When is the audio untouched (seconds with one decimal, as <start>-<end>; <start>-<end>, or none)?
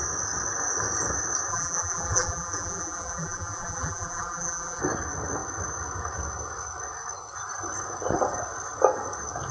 0.0-1.5; 4.8-9.5